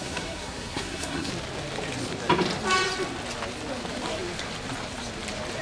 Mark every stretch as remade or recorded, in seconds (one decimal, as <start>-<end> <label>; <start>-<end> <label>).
0.0-1.3 remade; 1.3-5.6 recorded

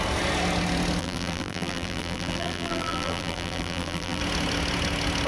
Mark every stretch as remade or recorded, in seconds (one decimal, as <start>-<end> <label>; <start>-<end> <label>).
0.0-1.0 recorded; 1.0-4.2 remade; 4.2-5.3 recorded

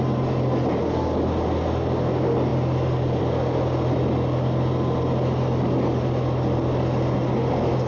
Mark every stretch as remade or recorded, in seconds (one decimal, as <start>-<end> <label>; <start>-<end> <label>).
0.0-7.9 recorded

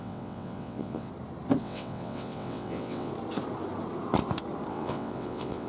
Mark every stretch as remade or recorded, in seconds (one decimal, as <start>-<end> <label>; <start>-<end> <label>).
0.0-1.1 remade; 1.1-1.6 recorded; 1.6-3.1 remade; 3.1-4.7 recorded; 4.7-5.7 remade

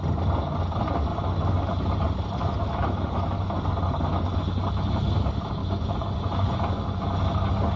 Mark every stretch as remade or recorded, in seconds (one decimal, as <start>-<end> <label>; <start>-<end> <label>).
0.0-5.6 recorded; 5.6-7.0 remade; 7.0-7.8 recorded

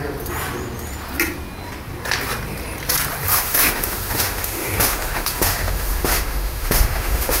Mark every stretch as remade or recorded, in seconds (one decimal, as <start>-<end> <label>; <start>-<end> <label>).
0.0-3.3 recorded; 3.3-7.4 remade

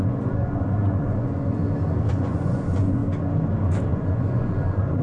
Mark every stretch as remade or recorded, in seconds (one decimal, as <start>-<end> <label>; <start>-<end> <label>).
0.0-1.6 remade; 1.6-2.1 recorded; 2.1-3.0 remade; 3.0-3.9 recorded; 3.9-5.0 remade